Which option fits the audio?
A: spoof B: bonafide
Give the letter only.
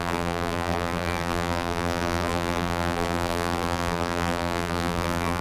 A